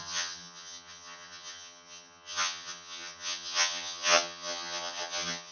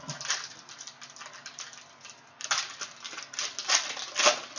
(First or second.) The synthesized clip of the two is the first